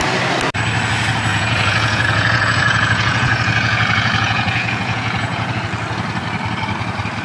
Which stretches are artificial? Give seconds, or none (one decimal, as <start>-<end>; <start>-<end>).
1.3-5.6